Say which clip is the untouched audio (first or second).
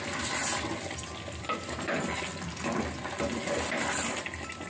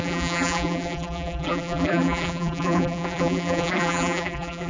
first